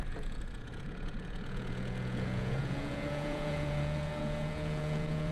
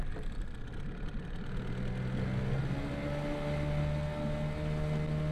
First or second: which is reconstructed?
first